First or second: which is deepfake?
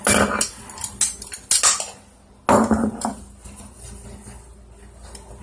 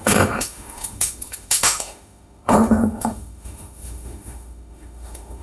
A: second